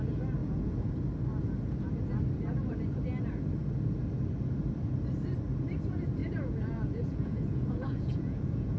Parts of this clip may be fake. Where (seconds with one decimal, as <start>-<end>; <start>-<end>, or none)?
0.4-0.9; 6.2-8.8